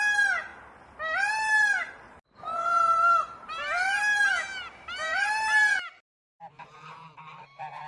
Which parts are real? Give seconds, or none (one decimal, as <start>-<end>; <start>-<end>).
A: 0.5-1.3

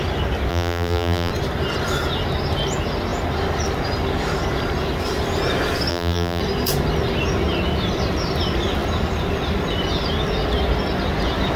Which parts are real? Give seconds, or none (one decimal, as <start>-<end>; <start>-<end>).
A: 0.0-0.5; 1.3-5.9; 6.4-11.6

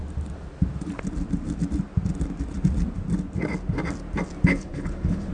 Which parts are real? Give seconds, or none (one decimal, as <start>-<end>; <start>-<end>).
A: 0.0-4.5